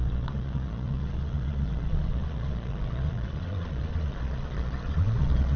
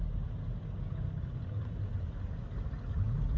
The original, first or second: second